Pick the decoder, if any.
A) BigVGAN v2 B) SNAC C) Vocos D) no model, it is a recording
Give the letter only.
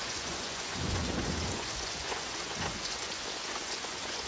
C